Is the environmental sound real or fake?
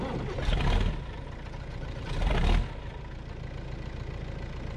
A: real